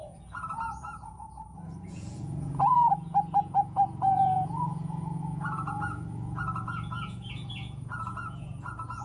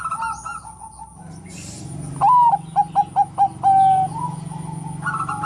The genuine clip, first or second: second